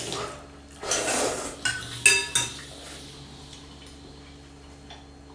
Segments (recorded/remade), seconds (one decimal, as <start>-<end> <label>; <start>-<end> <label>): 0.0-5.3 recorded